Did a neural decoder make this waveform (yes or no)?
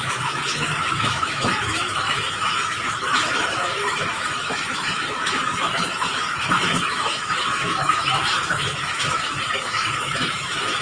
yes